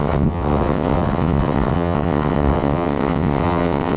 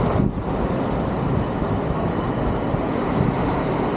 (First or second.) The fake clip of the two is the first